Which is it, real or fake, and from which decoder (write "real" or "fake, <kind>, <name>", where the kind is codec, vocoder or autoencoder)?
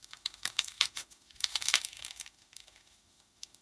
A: fake, autoencoder, DAC-VAE